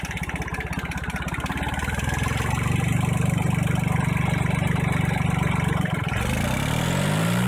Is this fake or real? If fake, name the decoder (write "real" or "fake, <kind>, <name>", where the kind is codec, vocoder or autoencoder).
real